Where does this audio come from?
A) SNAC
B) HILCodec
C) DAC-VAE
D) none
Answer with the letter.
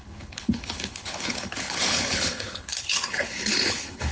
B